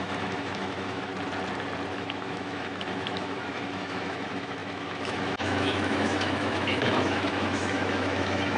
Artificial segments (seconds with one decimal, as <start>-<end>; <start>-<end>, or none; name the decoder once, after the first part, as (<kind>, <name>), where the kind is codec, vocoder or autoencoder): 0.0-1.1 (autoencoder, DAC-VAE); 1.9-8.6